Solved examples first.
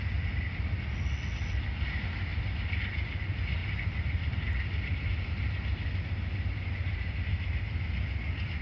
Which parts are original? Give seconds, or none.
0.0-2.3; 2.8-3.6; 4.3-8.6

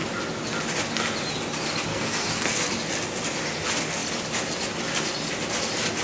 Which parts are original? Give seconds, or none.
0.0-1.9; 2.4-6.0

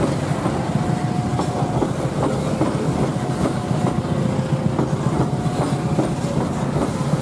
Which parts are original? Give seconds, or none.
0.0-7.2

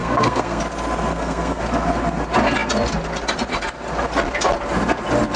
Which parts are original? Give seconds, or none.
0.6-1.1; 1.6-5.4

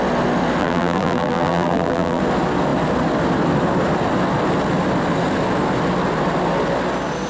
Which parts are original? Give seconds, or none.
0.0-0.6; 2.2-7.3

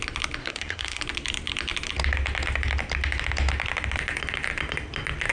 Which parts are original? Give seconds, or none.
0.0-0.4; 1.0-5.3